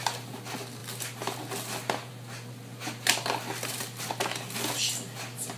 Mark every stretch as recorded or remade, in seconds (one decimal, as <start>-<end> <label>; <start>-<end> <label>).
0.0-5.6 recorded